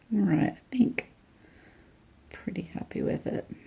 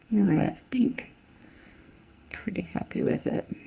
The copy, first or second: second